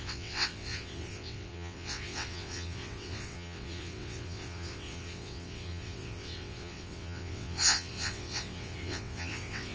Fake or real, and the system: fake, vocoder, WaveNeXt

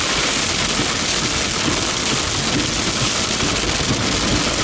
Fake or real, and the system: real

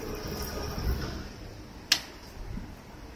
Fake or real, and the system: real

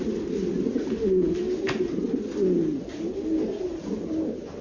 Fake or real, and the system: real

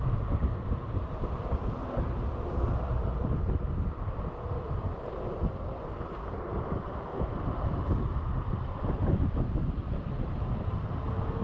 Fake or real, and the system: real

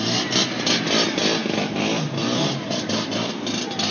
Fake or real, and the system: real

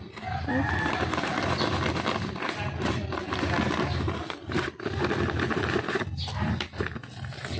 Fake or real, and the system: real